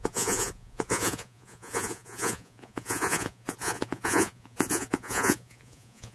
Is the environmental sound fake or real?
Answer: fake